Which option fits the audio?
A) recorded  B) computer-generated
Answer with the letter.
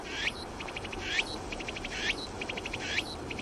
A